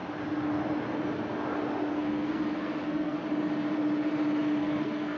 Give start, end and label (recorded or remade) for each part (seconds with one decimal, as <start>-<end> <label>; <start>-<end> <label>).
0.0-1.9 recorded; 1.9-3.2 remade; 3.2-4.6 recorded; 4.6-5.2 remade